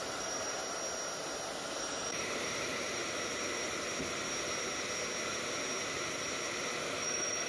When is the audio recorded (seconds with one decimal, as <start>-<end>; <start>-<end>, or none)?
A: 0.6-1.7; 3.0-6.8

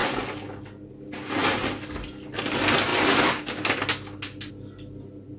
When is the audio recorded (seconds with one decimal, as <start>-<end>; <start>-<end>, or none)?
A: 0.0-5.4

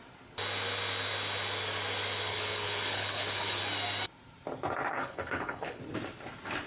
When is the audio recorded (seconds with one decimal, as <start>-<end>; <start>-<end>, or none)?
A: 0.0-2.3; 3.6-4.9; 5.8-6.7

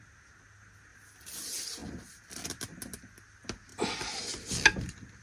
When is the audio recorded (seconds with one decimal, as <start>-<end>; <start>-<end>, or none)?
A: 0.0-5.2

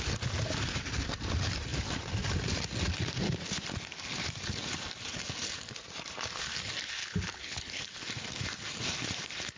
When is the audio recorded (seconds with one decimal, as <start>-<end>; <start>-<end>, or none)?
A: 0.0-7.0; 7.8-9.6